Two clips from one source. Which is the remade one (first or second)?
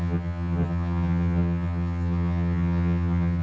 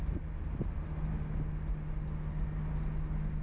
first